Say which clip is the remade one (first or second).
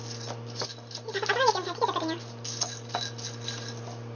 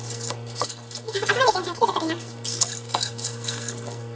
second